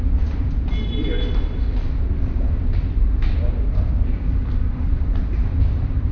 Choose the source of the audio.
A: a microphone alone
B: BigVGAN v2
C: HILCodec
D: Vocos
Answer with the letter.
B